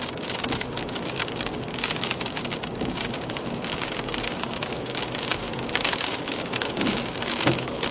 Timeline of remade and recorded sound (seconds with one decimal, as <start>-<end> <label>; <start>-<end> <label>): 0.0-7.9 remade